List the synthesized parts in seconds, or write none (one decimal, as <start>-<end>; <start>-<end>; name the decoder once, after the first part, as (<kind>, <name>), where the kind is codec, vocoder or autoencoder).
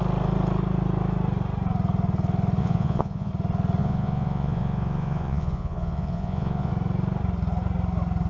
2.6-3.3 (vocoder, Vocos); 3.8-6.7